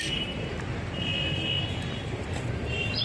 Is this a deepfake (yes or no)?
no